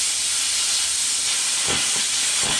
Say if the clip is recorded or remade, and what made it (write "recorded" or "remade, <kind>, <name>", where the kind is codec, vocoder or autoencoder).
recorded